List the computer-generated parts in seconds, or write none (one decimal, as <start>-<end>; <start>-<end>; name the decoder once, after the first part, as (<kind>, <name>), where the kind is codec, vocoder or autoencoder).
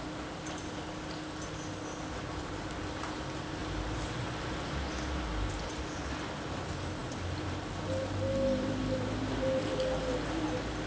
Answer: none